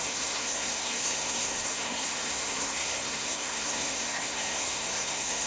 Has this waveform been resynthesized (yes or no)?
yes